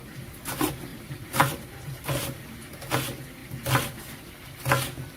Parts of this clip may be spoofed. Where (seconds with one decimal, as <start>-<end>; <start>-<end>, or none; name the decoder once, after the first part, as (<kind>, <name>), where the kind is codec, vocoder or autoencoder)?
0.9-2.4 (vocoder, BigVGAN v2); 3.4-4.8